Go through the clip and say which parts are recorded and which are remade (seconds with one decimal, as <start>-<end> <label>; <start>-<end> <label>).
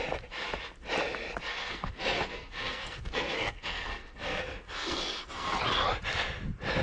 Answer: 0.0-1.5 recorded; 1.5-5.6 remade; 5.6-6.8 recorded